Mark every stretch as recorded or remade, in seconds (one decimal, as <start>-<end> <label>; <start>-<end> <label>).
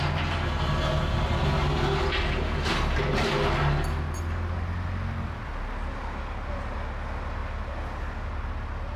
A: 0.0-9.0 recorded